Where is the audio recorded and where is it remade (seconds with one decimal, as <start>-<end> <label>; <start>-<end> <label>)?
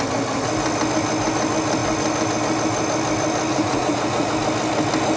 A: 0.0-3.5 recorded; 3.5-4.3 remade; 4.3-5.2 recorded